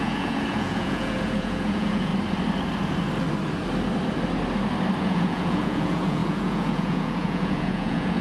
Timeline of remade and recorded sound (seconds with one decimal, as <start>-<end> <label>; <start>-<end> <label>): 0.0-2.1 remade; 2.1-5.0 recorded; 5.0-8.2 remade